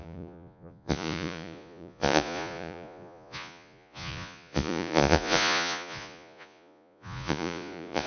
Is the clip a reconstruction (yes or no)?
yes